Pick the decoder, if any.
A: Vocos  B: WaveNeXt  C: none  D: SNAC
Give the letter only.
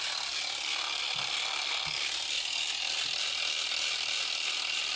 C